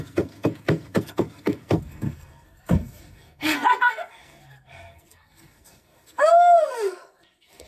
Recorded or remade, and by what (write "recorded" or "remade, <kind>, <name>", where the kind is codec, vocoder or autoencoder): remade, codec, SNAC